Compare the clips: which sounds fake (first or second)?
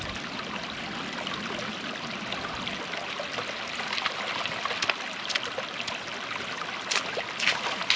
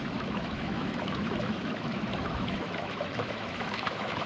second